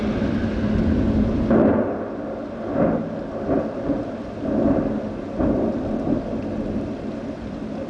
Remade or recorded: recorded